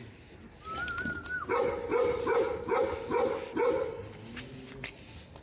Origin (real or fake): real